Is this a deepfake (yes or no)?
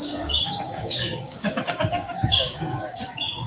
yes